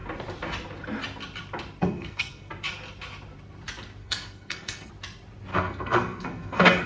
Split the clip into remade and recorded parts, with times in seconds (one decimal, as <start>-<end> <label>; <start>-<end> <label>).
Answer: 0.0-1.8 recorded; 1.8-2.5 remade; 2.5-4.0 recorded; 4.0-4.9 remade; 4.9-5.5 recorded; 5.5-6.9 remade